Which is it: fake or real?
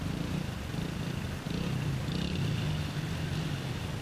real